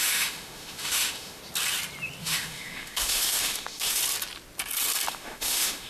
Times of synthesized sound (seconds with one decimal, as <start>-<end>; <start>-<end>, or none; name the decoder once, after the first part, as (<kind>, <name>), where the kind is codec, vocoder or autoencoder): 0.0-1.4 (autoencoder, DAC-VAE); 2.2-4.0; 5.1-5.9